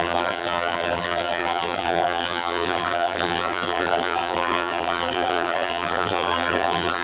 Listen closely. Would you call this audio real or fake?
fake